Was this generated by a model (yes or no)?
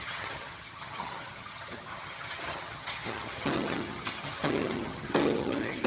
yes